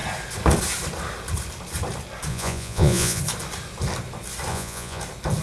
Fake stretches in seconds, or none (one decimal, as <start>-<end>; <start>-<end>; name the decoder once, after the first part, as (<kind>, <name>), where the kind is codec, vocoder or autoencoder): 2.3-3.2 (vocoder, Vocos); 4.5-5.0